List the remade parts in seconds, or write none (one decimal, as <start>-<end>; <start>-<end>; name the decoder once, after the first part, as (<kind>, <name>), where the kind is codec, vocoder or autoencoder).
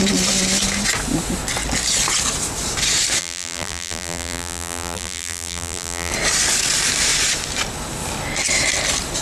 3.2-6.1 (vocoder, BigVGAN v2)